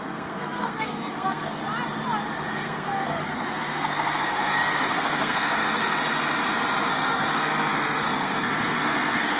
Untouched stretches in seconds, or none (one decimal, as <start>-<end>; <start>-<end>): 1.6-2.5; 5.9-6.9